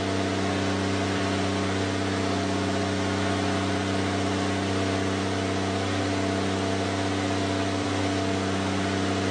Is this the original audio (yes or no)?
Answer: yes